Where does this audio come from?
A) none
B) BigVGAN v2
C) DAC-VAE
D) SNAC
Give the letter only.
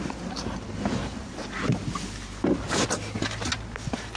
A